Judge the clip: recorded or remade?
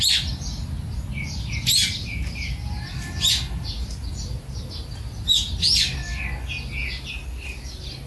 recorded